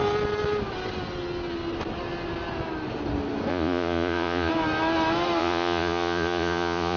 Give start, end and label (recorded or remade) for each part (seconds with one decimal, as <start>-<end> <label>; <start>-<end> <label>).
0.0-3.5 recorded; 3.5-4.5 remade; 4.5-5.4 recorded; 5.4-7.0 remade

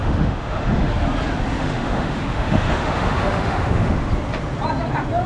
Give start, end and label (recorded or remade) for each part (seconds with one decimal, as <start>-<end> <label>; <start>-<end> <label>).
0.0-0.9 remade; 0.9-1.6 recorded; 1.6-4.1 remade; 4.1-5.3 recorded